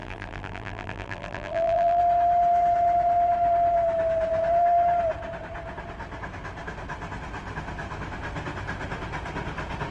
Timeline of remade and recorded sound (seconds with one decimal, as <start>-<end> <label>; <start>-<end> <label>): 0.0-2.0 remade; 2.0-9.9 recorded